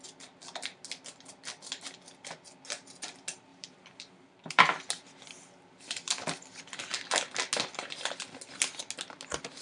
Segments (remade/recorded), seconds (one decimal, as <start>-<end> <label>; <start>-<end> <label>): 0.0-3.5 recorded; 3.5-6.8 remade; 6.8-9.6 recorded